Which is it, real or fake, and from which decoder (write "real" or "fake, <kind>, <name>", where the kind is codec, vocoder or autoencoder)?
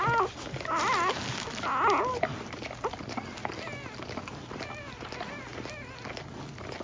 real